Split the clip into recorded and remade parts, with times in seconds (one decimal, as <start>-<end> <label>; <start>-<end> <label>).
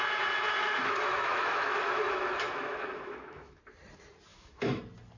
0.0-0.5 recorded; 0.5-3.6 remade; 3.6-4.3 recorded; 4.3-4.8 remade; 4.8-5.2 recorded